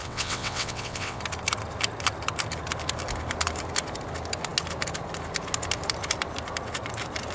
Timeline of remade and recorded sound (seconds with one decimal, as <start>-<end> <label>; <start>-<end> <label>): 0.0-1.2 remade; 1.2-7.3 recorded